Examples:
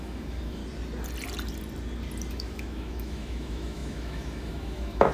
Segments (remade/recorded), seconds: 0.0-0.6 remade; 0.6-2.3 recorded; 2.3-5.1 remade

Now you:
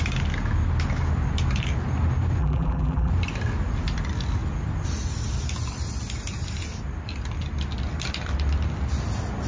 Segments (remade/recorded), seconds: 0.0-2.4 recorded; 2.4-3.1 remade; 3.1-9.5 recorded

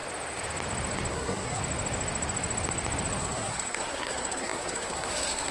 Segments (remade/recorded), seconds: 0.0-1.1 recorded; 1.1-1.6 remade; 1.6-3.2 recorded; 3.2-5.5 remade

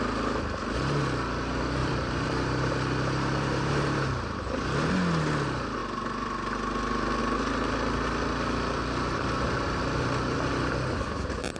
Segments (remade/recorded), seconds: 0.0-1.8 recorded; 1.8-4.9 remade; 4.9-11.6 recorded

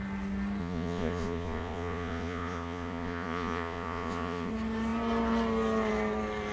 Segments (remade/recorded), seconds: 0.0-0.6 recorded; 0.6-4.5 remade; 4.5-6.5 recorded

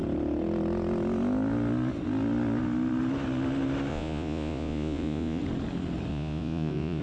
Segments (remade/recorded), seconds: 0.0-3.9 recorded; 3.9-5.4 remade; 5.4-6.1 recorded; 6.1-7.0 remade